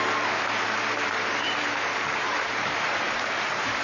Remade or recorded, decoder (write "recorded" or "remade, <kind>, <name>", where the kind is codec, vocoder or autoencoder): remade, vocoder, BigVGAN v2